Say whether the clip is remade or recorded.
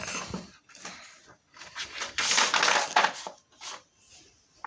recorded